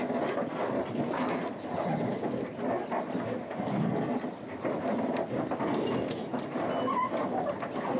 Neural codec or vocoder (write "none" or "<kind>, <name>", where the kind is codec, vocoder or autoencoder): none